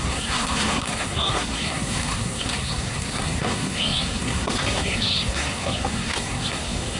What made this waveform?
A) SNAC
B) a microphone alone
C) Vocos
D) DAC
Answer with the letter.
A